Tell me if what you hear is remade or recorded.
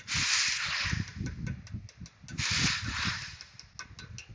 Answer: recorded